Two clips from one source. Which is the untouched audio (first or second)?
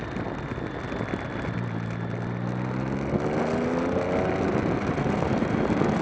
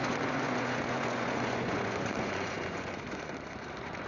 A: first